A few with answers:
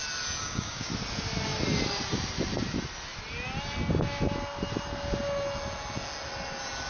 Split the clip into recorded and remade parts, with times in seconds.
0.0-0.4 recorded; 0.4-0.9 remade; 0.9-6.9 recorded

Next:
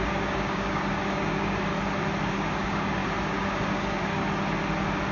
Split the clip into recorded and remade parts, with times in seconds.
0.0-1.7 remade; 1.7-2.2 recorded; 2.2-4.2 remade; 4.2-5.1 recorded

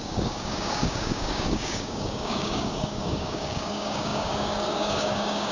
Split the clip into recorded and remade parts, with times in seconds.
0.0-5.5 remade

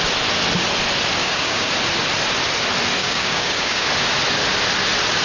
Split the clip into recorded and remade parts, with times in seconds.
0.0-1.2 recorded; 1.2-1.7 remade; 1.7-3.0 recorded; 3.0-3.9 remade; 3.9-5.2 recorded